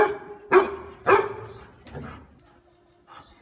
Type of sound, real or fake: real